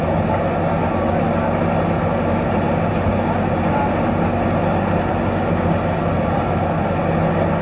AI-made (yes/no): no